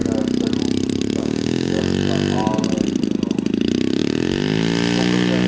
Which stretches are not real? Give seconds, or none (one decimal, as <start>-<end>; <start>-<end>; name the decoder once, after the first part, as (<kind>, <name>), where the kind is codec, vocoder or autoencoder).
1.2-1.8 (codec, DAC)